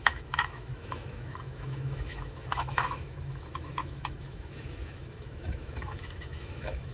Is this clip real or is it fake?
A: fake